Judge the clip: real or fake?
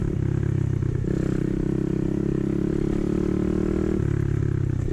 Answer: real